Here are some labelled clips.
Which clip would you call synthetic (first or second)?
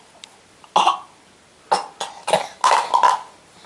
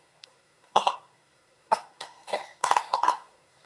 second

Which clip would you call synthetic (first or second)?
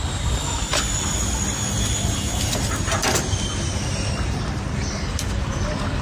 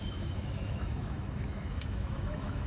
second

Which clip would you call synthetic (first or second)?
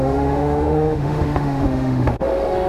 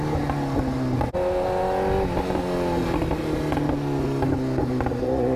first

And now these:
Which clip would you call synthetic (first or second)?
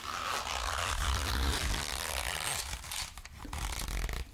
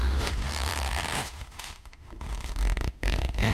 second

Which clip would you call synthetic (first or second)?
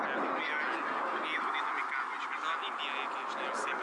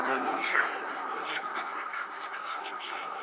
second